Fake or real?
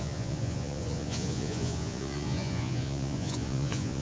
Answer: fake